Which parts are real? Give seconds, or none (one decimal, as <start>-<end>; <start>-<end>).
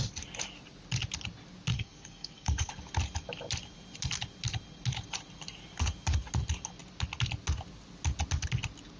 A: 0.0-1.7; 2.7-9.0